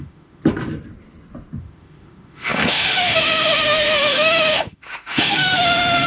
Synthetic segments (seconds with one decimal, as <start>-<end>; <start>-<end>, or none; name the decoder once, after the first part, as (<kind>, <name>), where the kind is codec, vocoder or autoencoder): 0.0-0.4 (autoencoder, DAC-VAE); 1.6-6.1